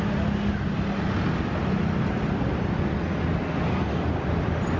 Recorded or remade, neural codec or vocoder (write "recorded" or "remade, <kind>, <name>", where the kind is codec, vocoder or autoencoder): recorded